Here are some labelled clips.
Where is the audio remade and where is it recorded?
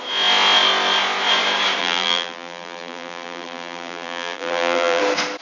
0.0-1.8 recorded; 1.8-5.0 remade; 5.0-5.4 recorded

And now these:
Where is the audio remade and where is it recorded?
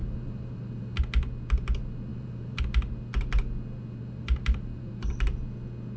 0.0-1.0 remade; 1.0-2.1 recorded; 2.1-2.6 remade; 2.6-4.0 recorded; 4.0-5.1 remade; 5.1-6.0 recorded